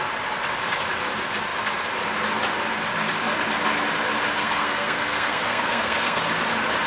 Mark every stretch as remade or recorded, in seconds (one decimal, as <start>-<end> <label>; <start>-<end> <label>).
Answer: 0.0-4.4 recorded; 4.4-6.2 remade; 6.2-6.9 recorded